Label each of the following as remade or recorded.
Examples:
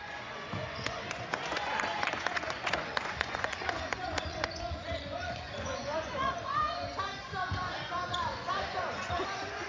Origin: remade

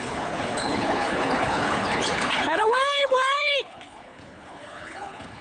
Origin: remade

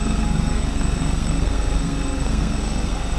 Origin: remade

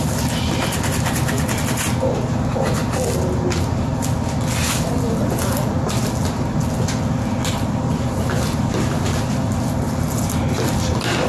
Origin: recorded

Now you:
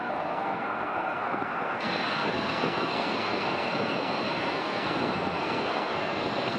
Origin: remade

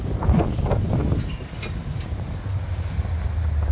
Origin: recorded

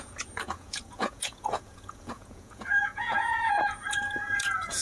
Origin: remade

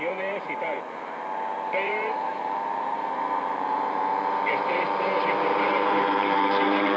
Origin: remade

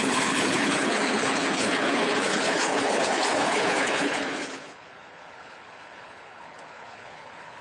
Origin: remade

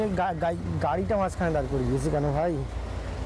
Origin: recorded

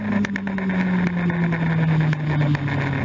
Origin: recorded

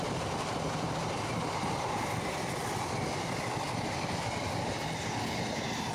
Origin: remade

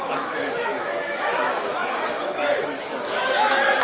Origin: remade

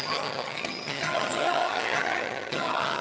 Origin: remade